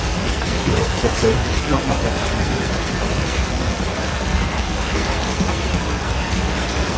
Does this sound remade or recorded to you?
remade